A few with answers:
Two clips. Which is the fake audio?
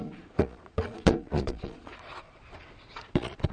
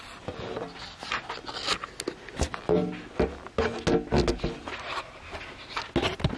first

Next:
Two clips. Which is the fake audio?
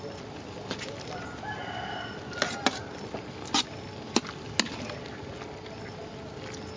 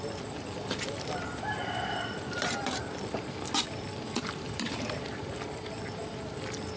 second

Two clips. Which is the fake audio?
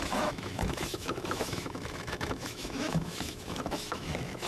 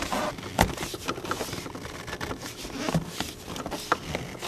first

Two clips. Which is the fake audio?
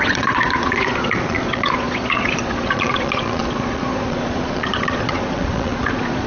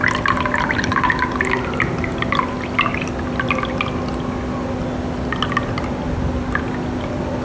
first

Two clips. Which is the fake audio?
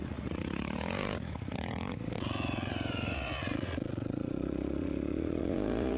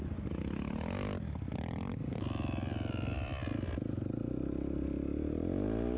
first